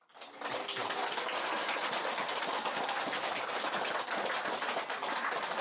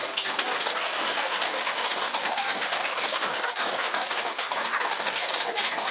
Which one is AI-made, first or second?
second